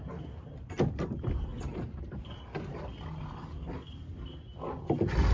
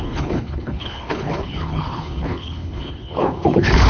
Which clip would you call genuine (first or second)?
first